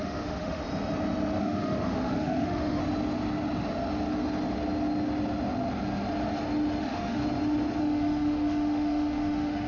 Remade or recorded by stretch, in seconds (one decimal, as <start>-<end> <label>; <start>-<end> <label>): 0.0-0.6 remade; 0.6-1.4 recorded; 1.4-2.8 remade; 2.8-6.8 recorded; 6.8-7.2 remade; 7.2-7.8 recorded; 7.8-9.7 remade